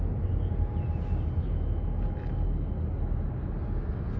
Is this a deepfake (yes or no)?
no